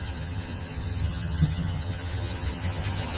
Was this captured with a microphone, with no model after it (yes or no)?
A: no